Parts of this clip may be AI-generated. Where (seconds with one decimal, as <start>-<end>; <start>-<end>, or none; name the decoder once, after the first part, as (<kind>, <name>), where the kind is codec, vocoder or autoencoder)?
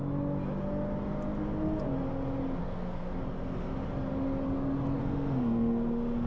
2.6-3.1 (codec, SNAC); 5.0-6.3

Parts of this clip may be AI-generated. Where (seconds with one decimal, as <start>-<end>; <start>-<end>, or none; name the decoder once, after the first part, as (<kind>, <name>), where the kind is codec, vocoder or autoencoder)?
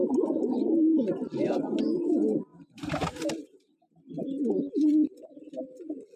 2.5-3.3 (vocoder, BigVGAN v2)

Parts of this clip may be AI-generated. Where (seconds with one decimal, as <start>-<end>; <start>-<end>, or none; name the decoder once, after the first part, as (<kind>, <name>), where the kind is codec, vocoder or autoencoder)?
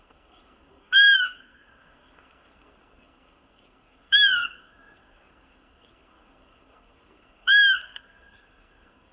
0.0-9.1 (codec, SNAC)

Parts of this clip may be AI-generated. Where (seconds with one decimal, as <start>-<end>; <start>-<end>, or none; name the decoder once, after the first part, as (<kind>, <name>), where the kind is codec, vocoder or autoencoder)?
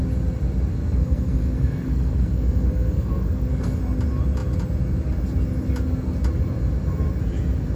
0.8-3.8 (codec, SNAC)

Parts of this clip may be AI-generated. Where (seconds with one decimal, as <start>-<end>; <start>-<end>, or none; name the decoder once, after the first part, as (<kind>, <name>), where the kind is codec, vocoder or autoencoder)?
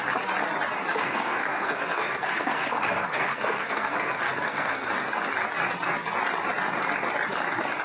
0.9-4.9 (codec, SNAC)